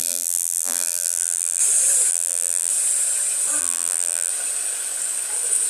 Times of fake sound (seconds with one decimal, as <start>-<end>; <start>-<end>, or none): 0.0-1.6; 2.1-2.7; 3.6-4.3